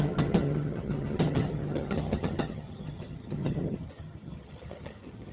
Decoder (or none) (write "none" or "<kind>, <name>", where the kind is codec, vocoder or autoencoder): vocoder, HiFi-GAN